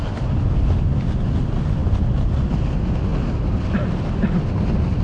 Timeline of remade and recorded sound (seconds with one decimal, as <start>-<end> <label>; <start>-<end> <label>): 0.0-5.0 recorded